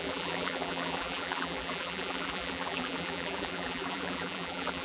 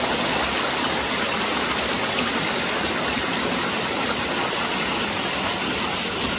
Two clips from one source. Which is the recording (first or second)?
second